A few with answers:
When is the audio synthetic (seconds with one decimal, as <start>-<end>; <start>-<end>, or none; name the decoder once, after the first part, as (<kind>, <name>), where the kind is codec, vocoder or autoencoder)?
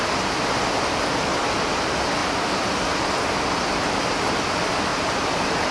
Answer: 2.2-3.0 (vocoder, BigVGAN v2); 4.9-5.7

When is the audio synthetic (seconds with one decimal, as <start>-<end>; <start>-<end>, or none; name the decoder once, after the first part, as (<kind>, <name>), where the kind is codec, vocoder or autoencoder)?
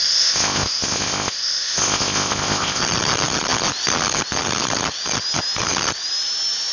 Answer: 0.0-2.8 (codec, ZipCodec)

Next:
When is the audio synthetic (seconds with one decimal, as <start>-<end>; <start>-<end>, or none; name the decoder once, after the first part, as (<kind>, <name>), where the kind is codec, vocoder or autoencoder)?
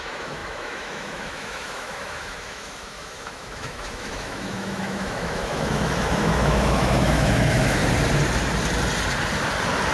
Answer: 0.0-7.8 (autoencoder, DAC-VAE)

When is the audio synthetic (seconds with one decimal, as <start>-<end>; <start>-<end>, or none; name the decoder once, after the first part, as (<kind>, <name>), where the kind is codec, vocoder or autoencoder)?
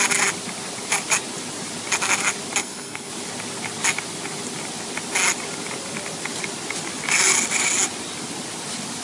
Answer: 2.6-3.1 (codec, SNAC)